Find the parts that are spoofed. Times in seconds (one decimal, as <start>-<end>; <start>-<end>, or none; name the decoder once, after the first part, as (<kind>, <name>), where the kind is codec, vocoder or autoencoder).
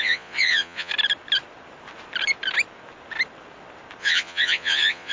0.0-0.9 (vocoder, Vocos); 4.0-5.1